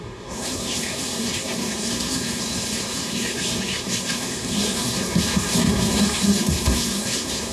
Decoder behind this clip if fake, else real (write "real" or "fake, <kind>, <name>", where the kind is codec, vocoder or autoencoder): fake, codec, SNAC